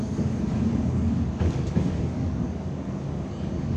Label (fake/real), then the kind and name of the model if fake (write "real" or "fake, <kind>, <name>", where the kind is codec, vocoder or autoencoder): fake, codec, DAC